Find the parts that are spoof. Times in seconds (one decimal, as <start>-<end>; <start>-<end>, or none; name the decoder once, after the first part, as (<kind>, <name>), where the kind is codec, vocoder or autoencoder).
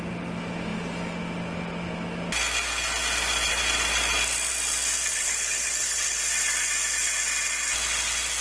5.1-6.2 (codec, HILCodec)